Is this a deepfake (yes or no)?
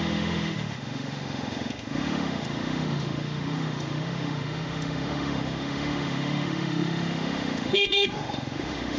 yes